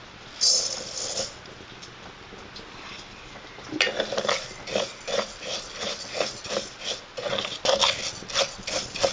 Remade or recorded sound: recorded